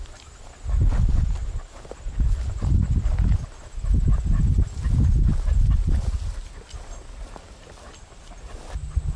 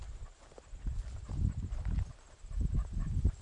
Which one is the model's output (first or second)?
second